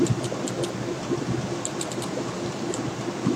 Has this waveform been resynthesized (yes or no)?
no